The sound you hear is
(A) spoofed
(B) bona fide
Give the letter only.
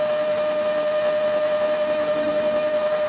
A